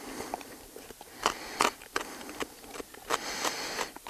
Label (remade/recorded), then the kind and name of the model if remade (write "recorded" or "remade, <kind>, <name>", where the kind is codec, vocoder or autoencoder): recorded